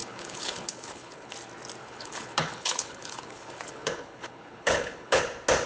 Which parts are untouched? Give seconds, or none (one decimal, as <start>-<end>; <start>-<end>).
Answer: 1.3-1.8; 5.2-5.7